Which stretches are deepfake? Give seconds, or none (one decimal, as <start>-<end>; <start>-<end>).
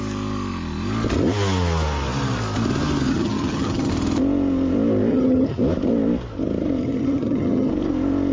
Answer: 3.1-3.9; 5.1-5.6; 6.8-7.7